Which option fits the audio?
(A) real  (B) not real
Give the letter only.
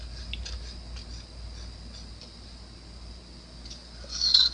A